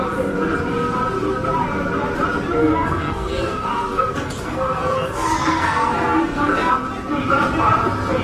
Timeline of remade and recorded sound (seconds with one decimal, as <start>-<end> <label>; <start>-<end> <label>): 0.0-2.6 recorded; 2.6-6.7 remade; 6.7-8.2 recorded